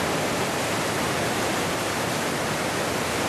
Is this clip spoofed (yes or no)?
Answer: no